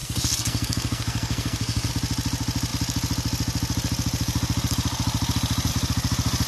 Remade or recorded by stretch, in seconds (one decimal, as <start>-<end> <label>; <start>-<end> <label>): 0.0-1.9 remade; 1.9-6.5 recorded

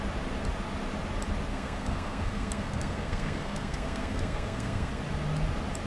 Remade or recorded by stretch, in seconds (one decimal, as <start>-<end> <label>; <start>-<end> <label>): 0.0-1.5 recorded; 1.5-5.0 remade; 5.0-5.9 recorded

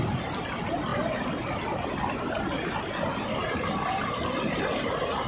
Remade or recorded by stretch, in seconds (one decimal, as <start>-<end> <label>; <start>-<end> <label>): 0.0-5.3 recorded

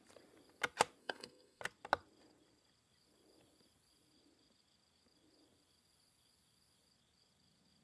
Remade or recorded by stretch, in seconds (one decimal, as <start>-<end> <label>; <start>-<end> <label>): 0.0-1.0 recorded; 1.0-1.6 remade; 1.6-7.8 recorded

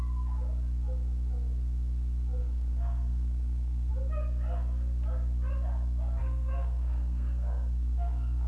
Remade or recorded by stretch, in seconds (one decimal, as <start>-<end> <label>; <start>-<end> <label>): 0.0-2.4 recorded; 2.4-3.9 remade; 3.9-6.2 recorded; 6.2-8.5 remade

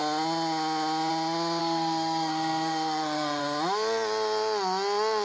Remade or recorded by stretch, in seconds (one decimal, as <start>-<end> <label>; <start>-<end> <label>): 0.0-1.6 recorded; 1.6-3.4 remade; 3.4-5.2 recorded

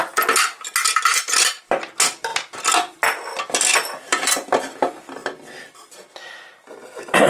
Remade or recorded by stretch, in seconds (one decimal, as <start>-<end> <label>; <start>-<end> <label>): 0.0-7.3 recorded

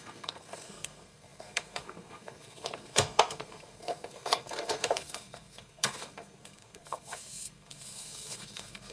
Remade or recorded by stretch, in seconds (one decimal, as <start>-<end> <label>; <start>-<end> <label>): 0.0-8.9 remade